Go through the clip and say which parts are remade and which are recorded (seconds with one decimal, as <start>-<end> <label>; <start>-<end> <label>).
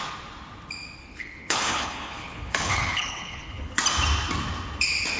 0.0-1.0 recorded; 1.0-3.7 remade; 3.7-5.2 recorded